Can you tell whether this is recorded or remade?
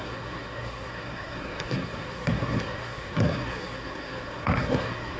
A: remade